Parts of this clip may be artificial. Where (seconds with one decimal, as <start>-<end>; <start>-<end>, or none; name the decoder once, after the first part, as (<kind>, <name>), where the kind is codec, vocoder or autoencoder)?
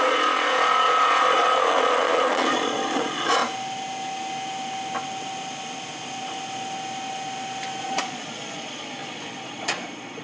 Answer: 0.0-3.4 (vocoder, Vocos); 7.8-10.2